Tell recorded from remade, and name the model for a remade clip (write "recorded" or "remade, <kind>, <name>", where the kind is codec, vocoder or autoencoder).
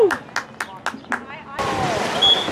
recorded